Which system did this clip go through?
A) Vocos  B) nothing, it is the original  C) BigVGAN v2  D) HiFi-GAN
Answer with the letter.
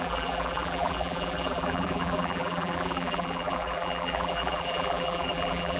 C